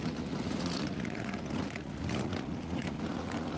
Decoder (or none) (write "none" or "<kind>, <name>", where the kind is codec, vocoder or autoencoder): vocoder, Vocos